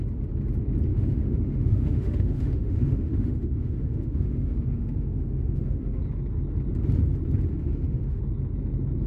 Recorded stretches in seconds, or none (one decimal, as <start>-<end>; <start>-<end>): 0.0-0.9; 6.0-7.5; 8.2-9.1